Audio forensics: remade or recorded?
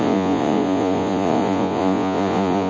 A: remade